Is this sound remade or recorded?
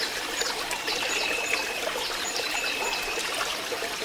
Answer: recorded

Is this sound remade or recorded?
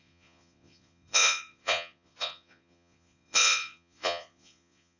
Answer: remade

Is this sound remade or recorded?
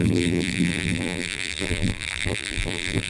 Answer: remade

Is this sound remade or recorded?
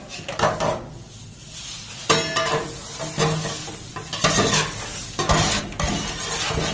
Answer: recorded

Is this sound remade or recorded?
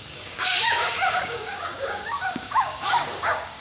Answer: remade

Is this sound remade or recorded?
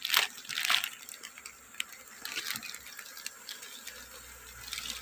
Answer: recorded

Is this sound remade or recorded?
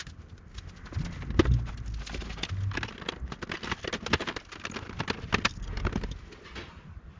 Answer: recorded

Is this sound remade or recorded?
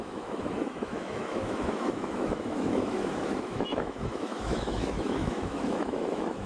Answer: remade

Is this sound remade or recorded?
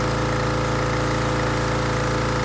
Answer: recorded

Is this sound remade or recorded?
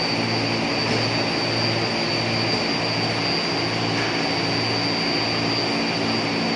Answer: recorded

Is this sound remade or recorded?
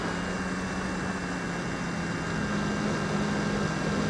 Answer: recorded